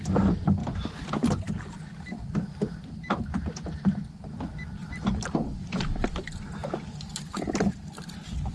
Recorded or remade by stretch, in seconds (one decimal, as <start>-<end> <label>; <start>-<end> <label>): 0.0-4.8 recorded; 4.8-7.0 remade; 7.0-8.5 recorded